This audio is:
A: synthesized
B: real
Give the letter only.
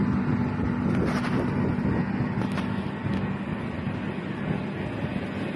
B